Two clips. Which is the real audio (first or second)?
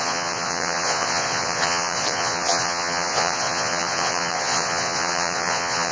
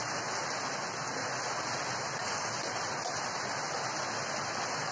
second